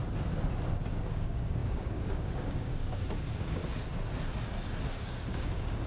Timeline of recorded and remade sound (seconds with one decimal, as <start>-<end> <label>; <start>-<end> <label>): 0.0-0.9 recorded; 0.9-3.6 remade; 3.6-4.9 recorded; 4.9-5.9 remade